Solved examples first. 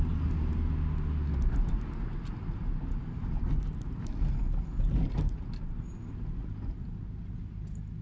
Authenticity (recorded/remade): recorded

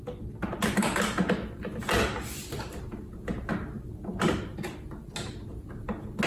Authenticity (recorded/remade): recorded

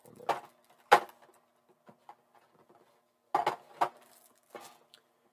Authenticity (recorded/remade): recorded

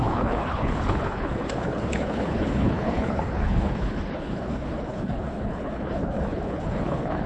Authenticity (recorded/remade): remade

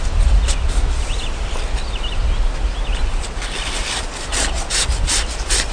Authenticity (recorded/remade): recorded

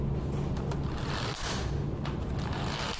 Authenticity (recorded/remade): recorded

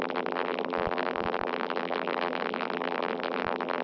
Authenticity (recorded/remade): remade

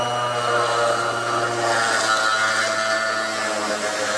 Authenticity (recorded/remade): recorded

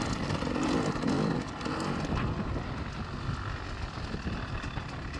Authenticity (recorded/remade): recorded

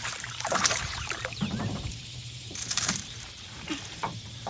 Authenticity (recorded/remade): remade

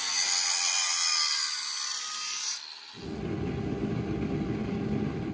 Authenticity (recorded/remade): recorded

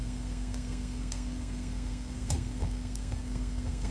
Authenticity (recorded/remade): remade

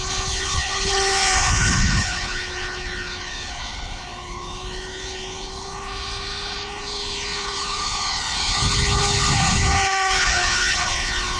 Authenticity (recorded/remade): remade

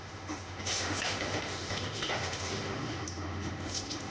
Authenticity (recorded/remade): remade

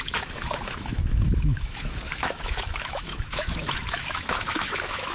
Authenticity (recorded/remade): remade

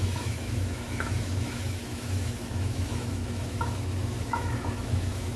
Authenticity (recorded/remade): remade